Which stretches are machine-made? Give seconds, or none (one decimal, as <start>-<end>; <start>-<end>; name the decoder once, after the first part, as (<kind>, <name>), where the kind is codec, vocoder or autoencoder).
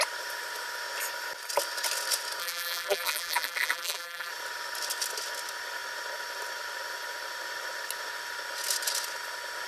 2.4-4.3 (vocoder, BigVGAN v2)